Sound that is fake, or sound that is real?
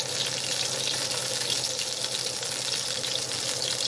real